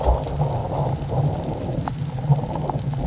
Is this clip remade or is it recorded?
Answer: recorded